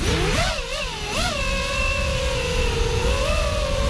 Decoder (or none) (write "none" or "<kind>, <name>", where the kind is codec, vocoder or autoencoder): none